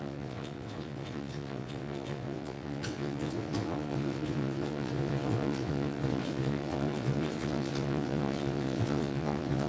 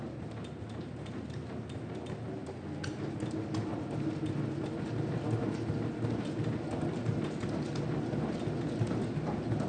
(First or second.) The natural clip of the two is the second